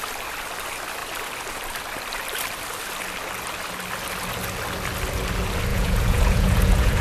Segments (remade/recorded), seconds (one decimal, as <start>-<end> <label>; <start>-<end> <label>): 0.0-5.7 recorded; 5.7-7.0 remade